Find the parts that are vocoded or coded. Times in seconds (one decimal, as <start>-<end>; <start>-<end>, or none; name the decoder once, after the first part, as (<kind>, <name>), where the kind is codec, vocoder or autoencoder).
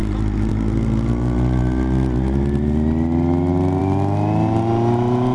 none